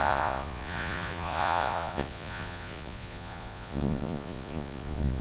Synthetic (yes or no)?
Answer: yes